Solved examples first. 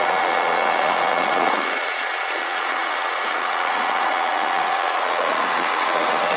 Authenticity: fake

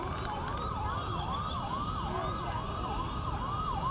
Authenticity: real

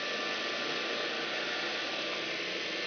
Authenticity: real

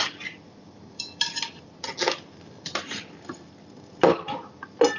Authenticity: real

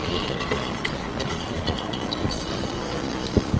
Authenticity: fake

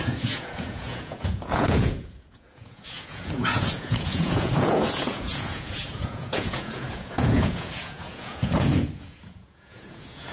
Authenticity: fake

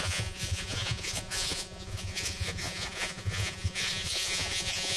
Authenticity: fake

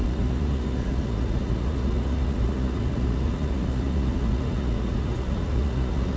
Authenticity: fake